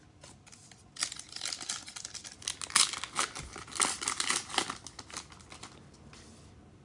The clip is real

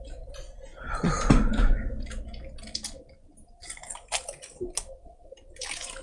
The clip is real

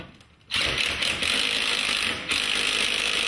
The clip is real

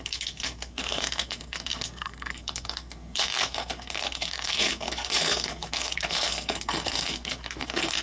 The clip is fake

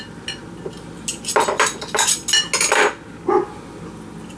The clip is real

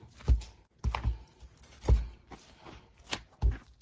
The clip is real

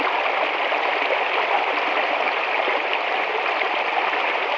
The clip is real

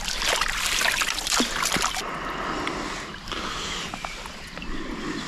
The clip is real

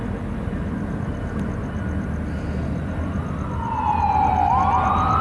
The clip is real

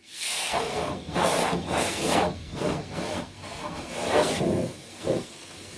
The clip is fake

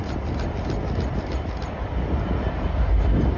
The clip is real